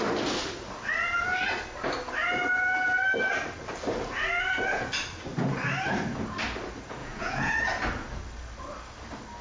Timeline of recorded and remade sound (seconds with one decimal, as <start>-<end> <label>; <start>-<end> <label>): 0.0-7.0 recorded; 7.0-7.5 remade; 7.5-9.4 recorded